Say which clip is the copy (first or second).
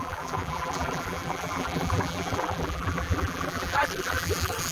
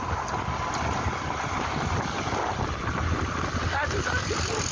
first